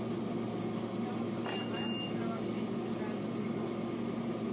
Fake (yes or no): no